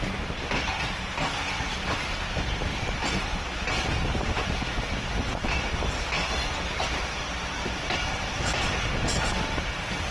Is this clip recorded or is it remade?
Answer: recorded